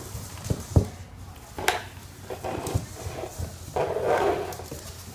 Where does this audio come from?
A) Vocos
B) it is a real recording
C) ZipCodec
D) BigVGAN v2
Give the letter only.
B